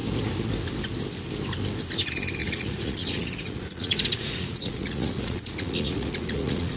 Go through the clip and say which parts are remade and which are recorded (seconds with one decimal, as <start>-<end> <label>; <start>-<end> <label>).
0.0-2.4 recorded; 2.4-6.8 remade